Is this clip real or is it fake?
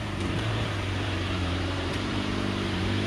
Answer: fake